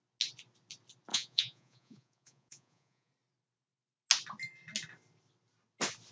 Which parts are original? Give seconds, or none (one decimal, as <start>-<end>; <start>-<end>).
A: 0.0-1.1; 3.1-6.1